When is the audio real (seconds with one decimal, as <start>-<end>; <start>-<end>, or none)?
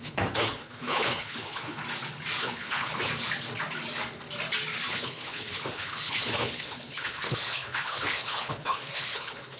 1.8-2.4; 3.1-4.9